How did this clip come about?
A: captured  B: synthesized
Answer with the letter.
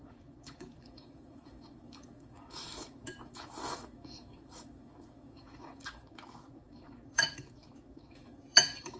B